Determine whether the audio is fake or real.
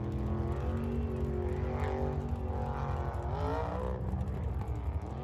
real